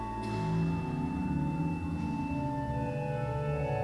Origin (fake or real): real